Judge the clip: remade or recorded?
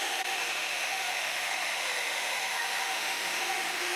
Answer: remade